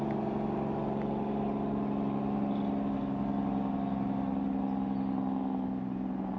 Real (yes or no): yes